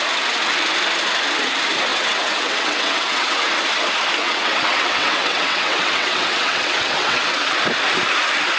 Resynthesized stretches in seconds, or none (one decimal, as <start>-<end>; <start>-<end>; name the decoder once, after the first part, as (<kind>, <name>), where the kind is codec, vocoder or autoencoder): 1.9-3.5 (vocoder, WaveNeXt); 4.2-7.5